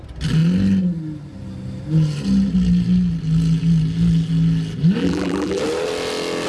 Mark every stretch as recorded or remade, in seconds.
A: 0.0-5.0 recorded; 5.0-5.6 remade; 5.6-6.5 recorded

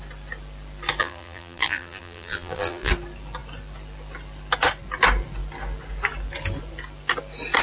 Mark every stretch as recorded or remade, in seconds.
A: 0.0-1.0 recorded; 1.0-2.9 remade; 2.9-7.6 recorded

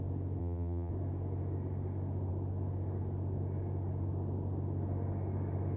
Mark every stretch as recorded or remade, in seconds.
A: 0.0-0.4 recorded; 0.4-0.9 remade; 0.9-5.8 recorded